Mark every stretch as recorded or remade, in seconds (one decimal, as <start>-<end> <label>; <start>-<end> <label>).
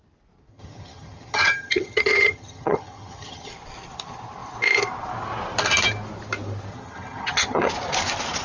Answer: 0.0-0.5 recorded; 0.5-3.5 remade; 3.5-6.7 recorded; 6.7-7.7 remade; 7.7-8.4 recorded